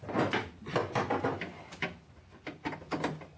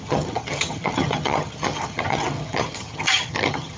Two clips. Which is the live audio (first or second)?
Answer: first